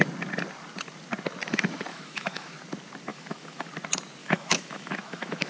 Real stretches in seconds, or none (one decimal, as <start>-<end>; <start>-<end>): 0.0-1.9; 2.5-3.1; 3.7-4.2